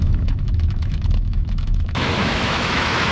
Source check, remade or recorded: remade